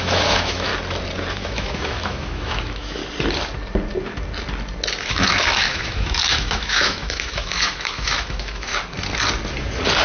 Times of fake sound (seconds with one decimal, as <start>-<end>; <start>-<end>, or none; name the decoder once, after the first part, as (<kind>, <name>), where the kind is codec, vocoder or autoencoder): 0.0-0.7 (autoencoder, DAC-VAE); 1.3-3.0; 5.0-8.7